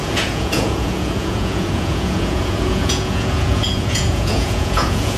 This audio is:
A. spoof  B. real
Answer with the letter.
A